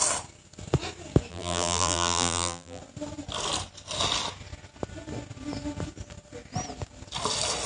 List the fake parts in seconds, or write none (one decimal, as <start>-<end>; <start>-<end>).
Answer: 1.3-2.8